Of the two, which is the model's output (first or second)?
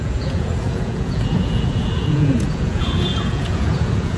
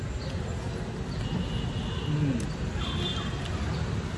first